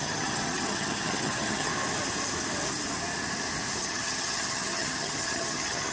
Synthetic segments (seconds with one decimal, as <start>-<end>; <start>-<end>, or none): 0.0-1.7; 3.8-5.9